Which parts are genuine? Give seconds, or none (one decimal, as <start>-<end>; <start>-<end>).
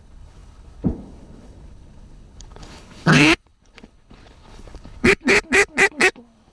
none